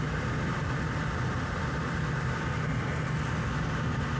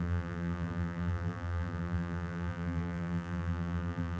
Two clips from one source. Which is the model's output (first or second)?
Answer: second